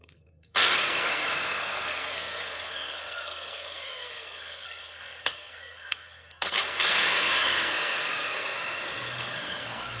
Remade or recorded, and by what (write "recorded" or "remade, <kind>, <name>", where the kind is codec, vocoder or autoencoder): remade, codec, SNAC